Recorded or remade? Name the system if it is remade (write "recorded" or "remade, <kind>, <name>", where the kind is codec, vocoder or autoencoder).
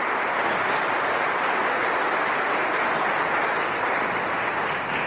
recorded